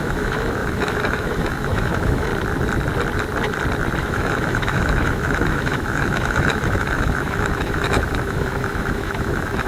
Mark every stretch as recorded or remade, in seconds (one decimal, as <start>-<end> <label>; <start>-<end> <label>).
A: 0.0-2.3 remade; 2.3-4.0 recorded; 4.0-9.7 remade